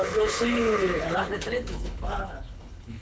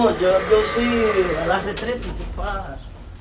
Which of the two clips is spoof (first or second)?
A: first